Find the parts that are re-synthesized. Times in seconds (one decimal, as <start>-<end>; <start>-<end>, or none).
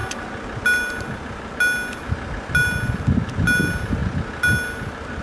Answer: none